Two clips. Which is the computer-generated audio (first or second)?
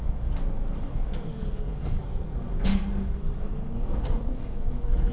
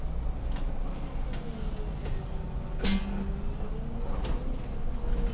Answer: first